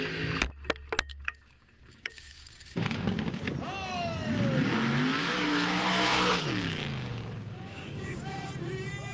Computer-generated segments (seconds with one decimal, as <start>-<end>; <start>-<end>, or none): 1.1-3.5; 5.2-8.5